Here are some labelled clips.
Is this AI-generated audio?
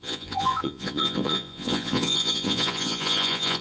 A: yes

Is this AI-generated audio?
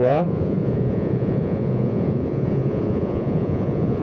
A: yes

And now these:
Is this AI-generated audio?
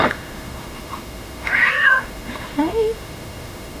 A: yes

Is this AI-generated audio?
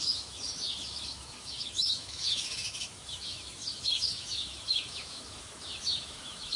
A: yes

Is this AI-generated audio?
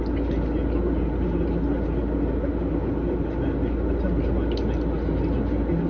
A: no